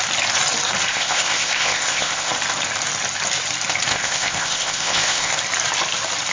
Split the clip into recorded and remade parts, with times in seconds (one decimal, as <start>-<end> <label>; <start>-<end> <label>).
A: 0.0-0.9 recorded; 0.9-2.3 remade; 2.3-3.9 recorded; 3.9-5.3 remade; 5.3-6.3 recorded